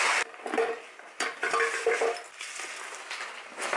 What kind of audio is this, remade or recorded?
recorded